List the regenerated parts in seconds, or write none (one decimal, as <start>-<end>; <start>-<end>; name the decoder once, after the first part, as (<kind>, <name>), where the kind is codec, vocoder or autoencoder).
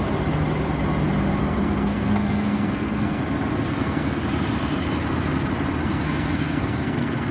1.4-3.2 (codec, SNAC); 3.7-4.2; 5.8-7.3